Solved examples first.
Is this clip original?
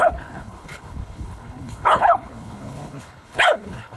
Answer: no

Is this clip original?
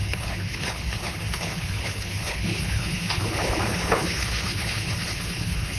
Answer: no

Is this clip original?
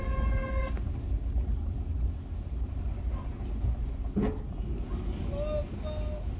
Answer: yes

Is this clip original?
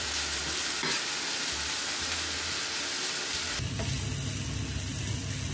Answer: yes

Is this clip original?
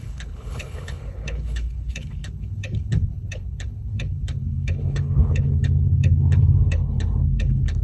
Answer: no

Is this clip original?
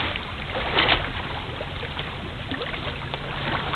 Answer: yes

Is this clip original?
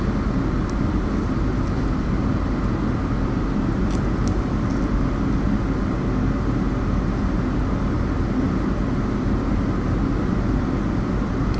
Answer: yes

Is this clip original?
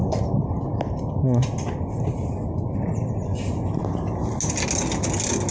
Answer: yes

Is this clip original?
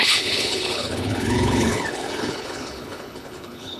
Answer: no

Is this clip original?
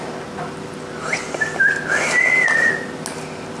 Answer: yes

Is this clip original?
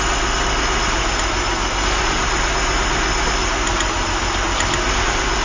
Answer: yes